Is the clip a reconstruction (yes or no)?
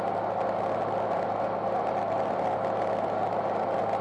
no